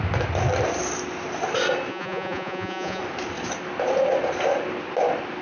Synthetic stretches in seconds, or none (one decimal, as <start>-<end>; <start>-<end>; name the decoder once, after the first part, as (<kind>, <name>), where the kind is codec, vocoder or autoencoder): 1.9-3.0 (vocoder, Vocos)